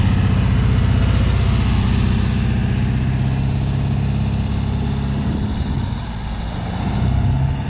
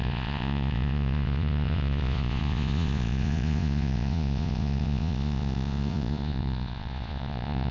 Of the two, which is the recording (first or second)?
first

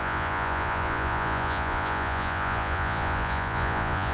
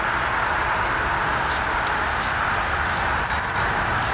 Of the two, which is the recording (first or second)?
second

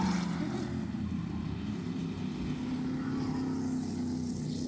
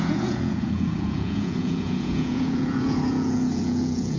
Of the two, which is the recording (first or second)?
first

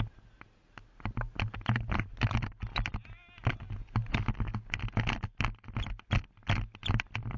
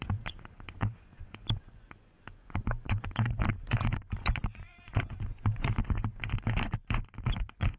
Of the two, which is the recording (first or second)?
first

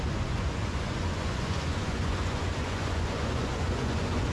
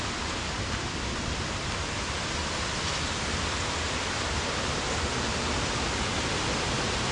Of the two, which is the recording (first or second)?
second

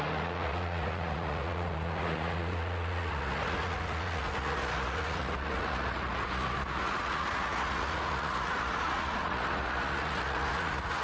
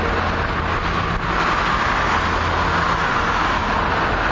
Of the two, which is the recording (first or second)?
second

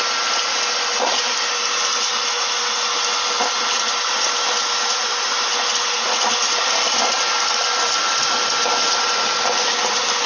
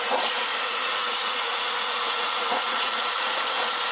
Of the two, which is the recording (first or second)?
first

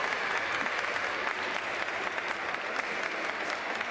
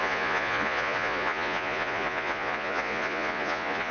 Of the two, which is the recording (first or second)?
first